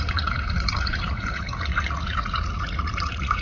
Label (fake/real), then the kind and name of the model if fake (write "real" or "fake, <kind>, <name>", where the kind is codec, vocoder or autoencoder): fake, vocoder, Vocos